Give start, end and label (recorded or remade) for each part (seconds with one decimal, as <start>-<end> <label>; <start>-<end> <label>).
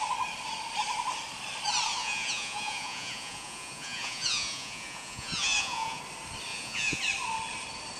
0.0-2.0 recorded; 2.0-6.0 remade; 6.0-6.5 recorded; 6.5-7.0 remade; 7.0-8.0 recorded